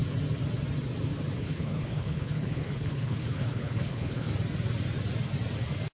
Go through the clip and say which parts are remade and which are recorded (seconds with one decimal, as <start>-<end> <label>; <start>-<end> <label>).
0.0-1.4 recorded; 1.4-4.3 remade; 4.3-5.9 recorded